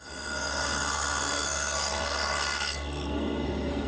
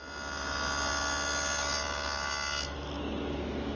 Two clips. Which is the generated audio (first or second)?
first